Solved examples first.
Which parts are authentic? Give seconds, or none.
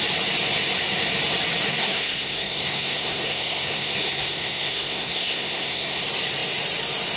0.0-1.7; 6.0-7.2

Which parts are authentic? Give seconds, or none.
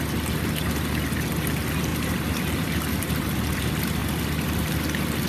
0.0-1.9; 3.6-5.3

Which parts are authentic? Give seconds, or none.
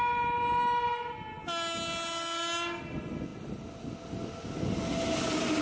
0.0-5.6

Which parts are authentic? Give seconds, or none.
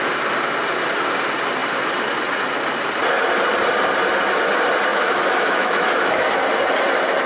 0.0-4.9; 6.3-7.3